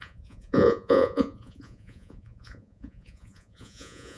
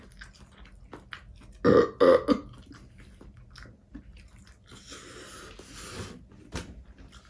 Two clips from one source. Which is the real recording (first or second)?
second